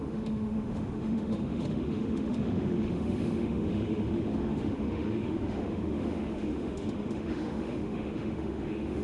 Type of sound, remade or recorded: remade